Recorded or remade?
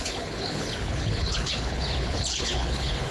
remade